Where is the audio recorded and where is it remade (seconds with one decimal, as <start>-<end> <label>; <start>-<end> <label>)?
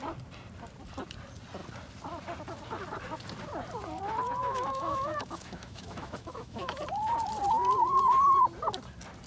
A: 0.0-4.4 recorded; 4.4-6.8 remade; 6.8-9.3 recorded